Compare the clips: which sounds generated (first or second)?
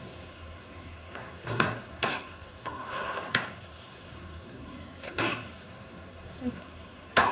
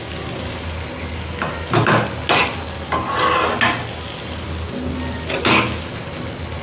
first